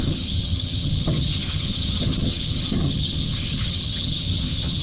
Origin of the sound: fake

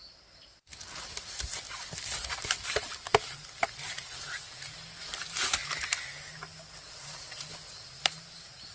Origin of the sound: real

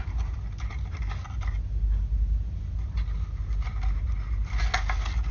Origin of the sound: real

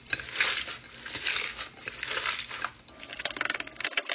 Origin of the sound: real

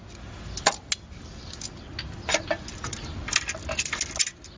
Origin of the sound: real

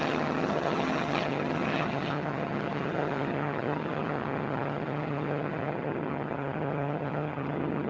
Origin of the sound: fake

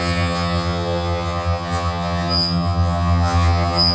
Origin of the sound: fake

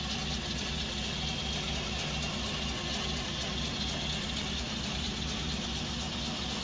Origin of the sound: real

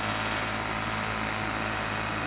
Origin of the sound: real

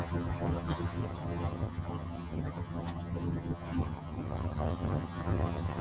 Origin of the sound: fake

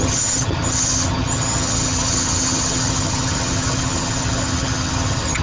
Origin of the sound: fake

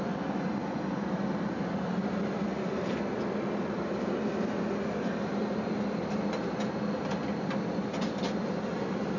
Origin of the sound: real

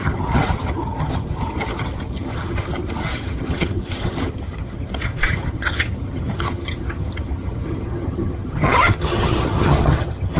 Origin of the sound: fake